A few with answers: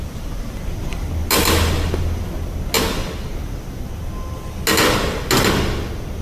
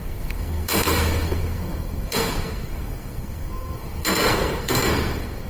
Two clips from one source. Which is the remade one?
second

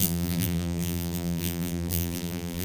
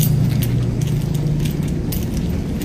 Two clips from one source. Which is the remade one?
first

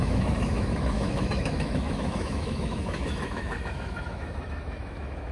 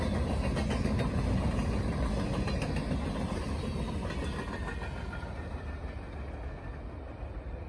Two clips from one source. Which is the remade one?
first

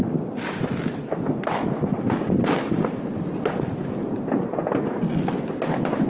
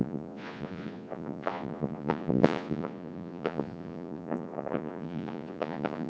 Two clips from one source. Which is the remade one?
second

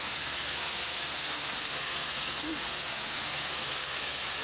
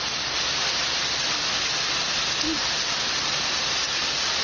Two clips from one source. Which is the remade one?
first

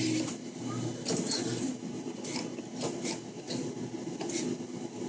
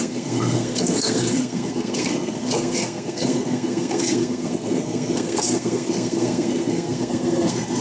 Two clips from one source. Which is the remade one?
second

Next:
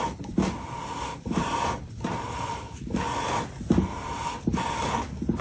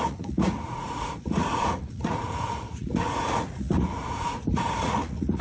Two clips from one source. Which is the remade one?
second